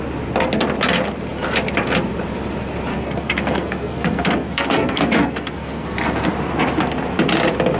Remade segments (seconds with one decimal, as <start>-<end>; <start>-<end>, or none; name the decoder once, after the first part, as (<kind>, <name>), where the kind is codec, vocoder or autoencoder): 2.9-6.3 (codec, SNAC)